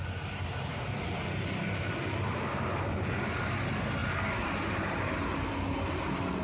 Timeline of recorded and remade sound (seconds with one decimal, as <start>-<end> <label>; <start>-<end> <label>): 0.0-0.7 recorded; 0.7-3.3 remade; 3.3-4.0 recorded; 4.0-5.5 remade; 5.5-6.4 recorded